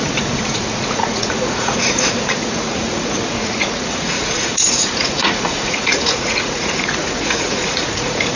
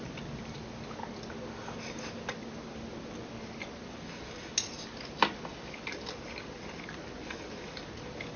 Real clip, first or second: second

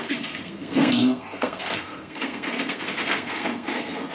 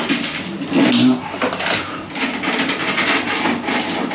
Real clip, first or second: second